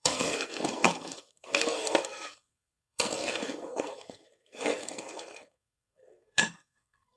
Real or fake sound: fake